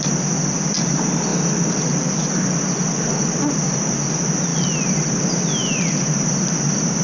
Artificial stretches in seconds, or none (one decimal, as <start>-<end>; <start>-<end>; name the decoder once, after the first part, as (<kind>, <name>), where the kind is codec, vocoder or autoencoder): 4.5-7.0 (vocoder, BigVGAN v2)